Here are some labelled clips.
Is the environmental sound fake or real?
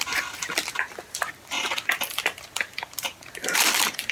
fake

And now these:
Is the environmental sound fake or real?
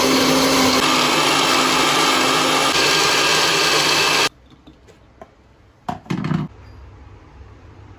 real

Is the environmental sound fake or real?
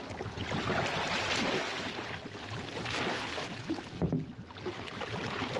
real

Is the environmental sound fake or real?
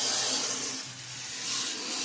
real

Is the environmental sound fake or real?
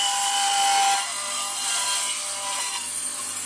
real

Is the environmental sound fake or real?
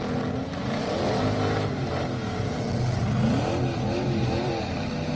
real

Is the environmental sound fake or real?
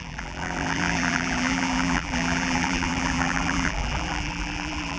fake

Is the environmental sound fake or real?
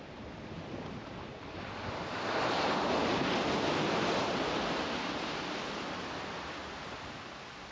real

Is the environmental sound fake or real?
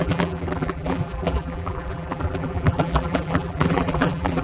fake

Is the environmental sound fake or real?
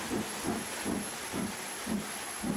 real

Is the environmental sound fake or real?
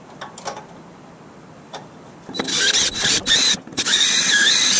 fake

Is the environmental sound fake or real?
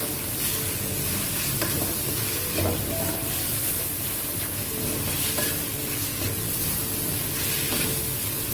real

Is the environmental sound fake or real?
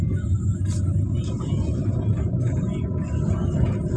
real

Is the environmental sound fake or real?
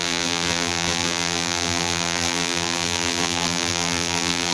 fake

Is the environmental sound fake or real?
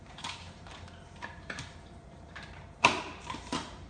fake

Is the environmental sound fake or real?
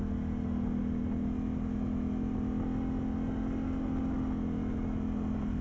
real